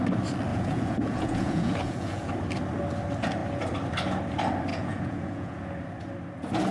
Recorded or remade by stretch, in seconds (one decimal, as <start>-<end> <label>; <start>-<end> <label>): 0.0-0.5 recorded; 0.5-2.3 remade; 2.3-4.7 recorded; 4.7-5.6 remade; 5.6-6.7 recorded